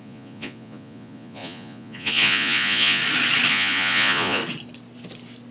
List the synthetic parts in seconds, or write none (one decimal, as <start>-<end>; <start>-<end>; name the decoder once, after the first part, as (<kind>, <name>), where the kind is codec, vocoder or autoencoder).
0.0-3.0 (vocoder, Vocos); 3.5-4.4

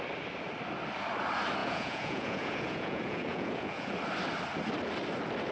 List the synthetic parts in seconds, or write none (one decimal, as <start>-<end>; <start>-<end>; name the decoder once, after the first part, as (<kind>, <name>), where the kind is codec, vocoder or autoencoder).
1.6-3.9 (vocoder, Vocos)

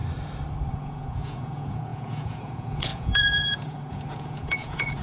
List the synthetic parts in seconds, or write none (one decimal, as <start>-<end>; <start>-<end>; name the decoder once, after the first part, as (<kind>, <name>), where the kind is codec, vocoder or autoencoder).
0.7-5.0 (vocoder, Vocos)

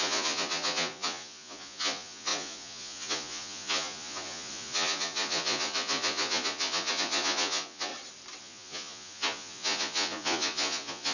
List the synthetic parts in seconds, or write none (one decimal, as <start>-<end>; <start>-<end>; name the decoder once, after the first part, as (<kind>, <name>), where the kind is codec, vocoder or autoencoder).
0.0-7.9 (vocoder, Vocos); 8.4-11.1

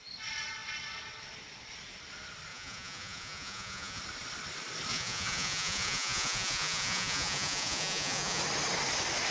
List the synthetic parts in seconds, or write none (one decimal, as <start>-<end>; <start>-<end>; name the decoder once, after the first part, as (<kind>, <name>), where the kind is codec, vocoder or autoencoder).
2.5-4.0 (vocoder, Vocos); 4.9-8.4

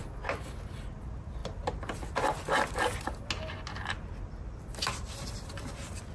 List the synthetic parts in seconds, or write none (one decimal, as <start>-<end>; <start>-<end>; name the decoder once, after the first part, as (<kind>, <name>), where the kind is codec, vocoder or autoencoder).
none